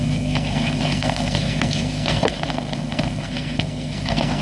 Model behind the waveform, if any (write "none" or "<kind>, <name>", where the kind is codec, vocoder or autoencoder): codec, SNAC